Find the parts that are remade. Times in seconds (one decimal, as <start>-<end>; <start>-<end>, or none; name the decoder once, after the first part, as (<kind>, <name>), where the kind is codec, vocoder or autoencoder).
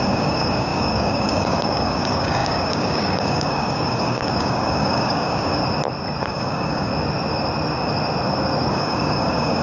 0.0-5.6 (codec, DAC); 6.2-6.9; 8.7-9.6